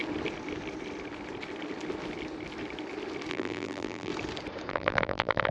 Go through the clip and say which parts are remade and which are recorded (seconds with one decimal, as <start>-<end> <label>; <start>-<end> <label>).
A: 0.0-3.3 recorded; 3.3-4.1 remade; 4.1-4.7 recorded; 4.7-5.5 remade